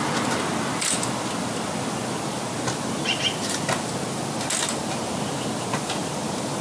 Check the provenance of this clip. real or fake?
real